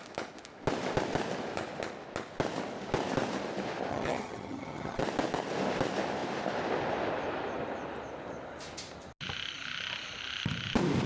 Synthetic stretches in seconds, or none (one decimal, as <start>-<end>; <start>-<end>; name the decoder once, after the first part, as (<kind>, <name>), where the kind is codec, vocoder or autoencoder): 3.9-5.0 (vocoder, HiFi-GAN)